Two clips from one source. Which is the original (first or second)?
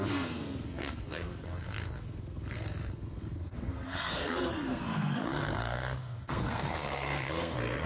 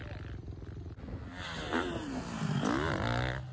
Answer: second